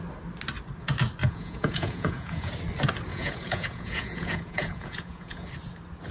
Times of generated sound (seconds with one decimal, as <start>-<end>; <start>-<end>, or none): 1.2-2.5; 3.1-5.5